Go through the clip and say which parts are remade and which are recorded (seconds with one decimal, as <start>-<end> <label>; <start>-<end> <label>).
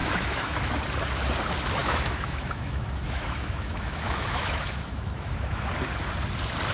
0.0-0.8 remade; 0.8-1.8 recorded; 1.8-5.7 remade; 5.7-6.7 recorded